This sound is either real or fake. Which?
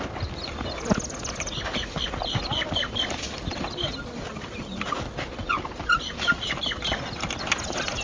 real